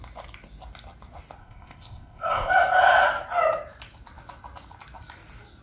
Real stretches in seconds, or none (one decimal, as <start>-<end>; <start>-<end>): 0.0-1.4; 2.5-5.6